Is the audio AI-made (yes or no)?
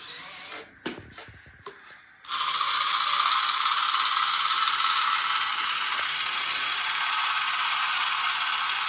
no